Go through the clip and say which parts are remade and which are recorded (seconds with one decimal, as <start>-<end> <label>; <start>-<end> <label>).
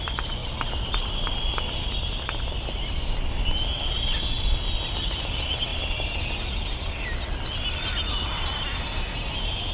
0.0-9.7 recorded